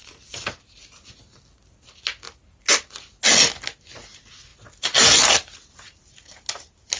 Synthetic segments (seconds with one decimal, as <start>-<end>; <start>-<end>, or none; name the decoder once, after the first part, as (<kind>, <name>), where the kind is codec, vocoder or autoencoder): none